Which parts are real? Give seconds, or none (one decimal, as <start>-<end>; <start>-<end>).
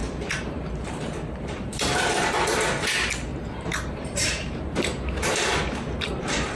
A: 2.6-3.3